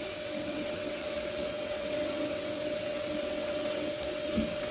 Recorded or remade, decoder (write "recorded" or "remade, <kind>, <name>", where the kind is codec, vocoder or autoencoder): remade, vocoder, WaveNeXt